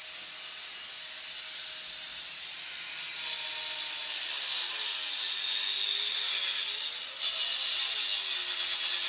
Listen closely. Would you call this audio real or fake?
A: real